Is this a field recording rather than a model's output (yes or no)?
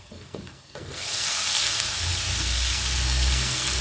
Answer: no